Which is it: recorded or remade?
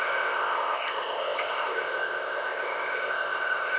remade